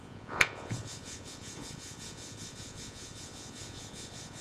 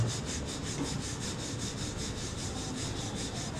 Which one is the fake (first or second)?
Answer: first